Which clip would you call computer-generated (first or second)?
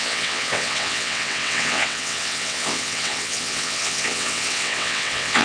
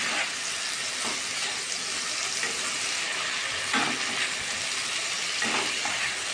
first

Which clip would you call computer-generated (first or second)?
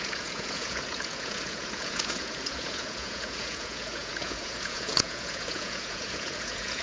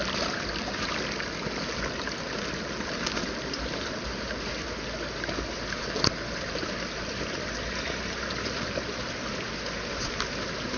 first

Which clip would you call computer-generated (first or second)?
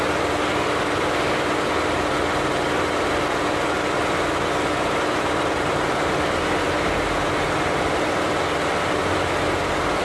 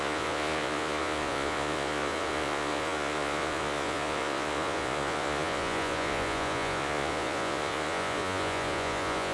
second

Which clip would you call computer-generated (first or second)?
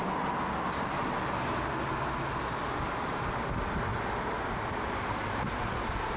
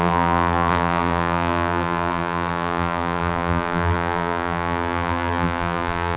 second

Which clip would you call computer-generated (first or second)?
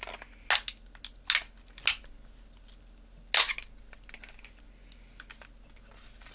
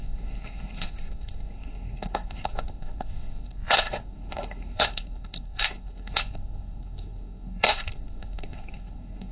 second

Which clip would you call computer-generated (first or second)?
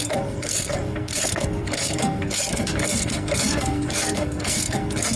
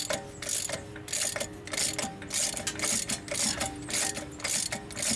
first